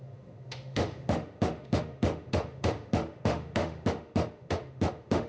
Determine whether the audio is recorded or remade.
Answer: remade